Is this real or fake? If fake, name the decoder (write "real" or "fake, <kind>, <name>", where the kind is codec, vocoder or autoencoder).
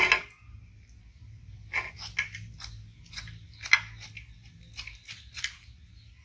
real